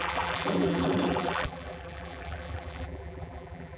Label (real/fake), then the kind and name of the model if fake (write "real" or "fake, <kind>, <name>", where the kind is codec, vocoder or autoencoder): fake, vocoder, BigVGAN v2